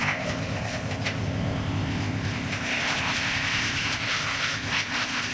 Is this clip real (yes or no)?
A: no